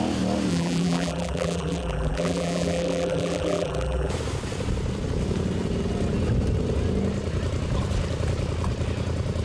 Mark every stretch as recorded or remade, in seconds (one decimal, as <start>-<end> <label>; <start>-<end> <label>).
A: 0.0-0.5 recorded; 0.5-4.1 remade; 4.1-9.4 recorded